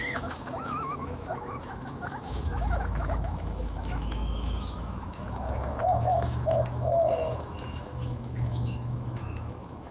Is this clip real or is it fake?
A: fake